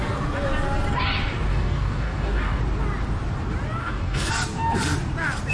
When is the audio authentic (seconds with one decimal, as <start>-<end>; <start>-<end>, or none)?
0.0-1.5; 2.6-3.8; 4.3-5.5